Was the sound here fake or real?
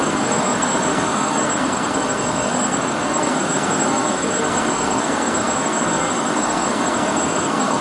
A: fake